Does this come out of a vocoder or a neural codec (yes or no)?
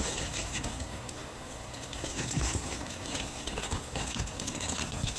yes